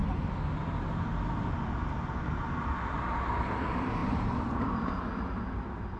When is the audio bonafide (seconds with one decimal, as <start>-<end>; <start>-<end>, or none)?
0.0-6.0

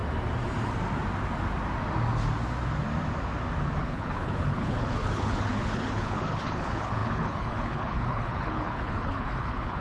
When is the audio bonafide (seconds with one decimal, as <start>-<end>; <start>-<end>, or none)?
0.0-3.8

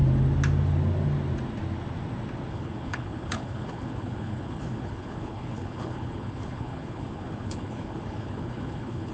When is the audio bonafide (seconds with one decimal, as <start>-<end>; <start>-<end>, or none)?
0.0-2.5

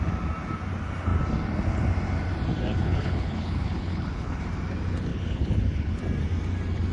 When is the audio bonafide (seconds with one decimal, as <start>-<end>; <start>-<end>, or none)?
0.0-2.8; 4.4-5.1; 6.0-6.9

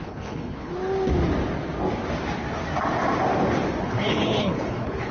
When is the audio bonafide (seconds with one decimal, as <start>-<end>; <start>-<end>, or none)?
0.7-3.8

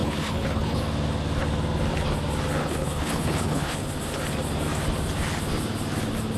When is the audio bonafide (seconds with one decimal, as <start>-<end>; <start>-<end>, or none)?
0.8-2.6; 3.9-6.4